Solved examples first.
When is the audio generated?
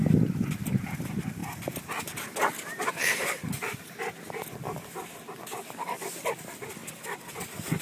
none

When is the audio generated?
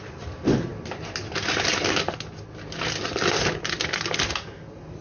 none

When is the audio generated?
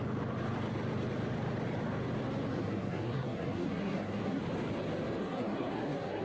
2.5-4.4 (codec, SNAC); 5.2-6.2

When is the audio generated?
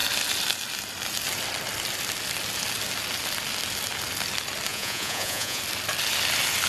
4.7-5.6 (vocoder, Vocos)